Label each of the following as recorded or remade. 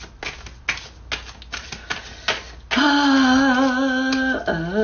recorded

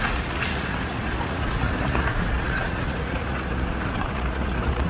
remade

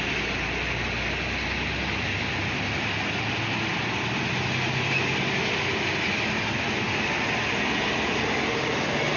recorded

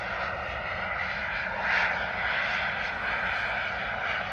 recorded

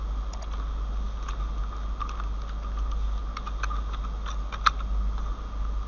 recorded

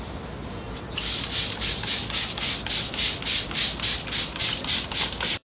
recorded